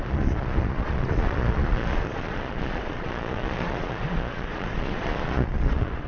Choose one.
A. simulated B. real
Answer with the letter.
A